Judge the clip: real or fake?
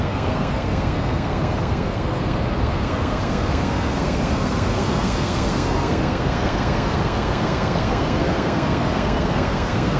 fake